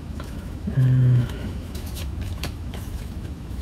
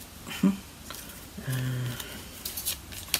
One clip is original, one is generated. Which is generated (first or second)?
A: first